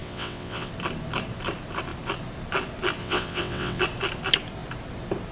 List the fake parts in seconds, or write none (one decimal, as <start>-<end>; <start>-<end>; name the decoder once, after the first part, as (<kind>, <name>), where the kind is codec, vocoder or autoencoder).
0.0-0.7 (vocoder, WaveNeXt); 3.0-3.8